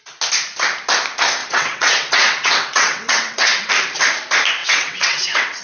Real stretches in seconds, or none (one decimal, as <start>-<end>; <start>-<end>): 0.0-1.4; 3.7-4.6